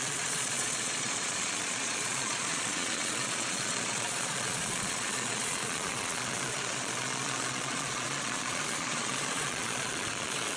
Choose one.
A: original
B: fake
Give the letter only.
B